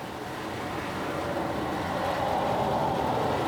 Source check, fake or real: real